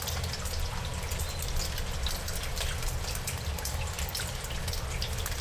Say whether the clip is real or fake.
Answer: real